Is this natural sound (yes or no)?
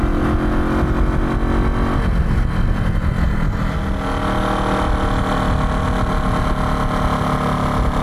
yes